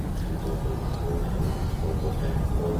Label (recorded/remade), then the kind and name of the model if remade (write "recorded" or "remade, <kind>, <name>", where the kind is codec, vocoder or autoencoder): recorded